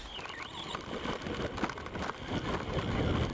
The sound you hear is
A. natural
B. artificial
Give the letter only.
A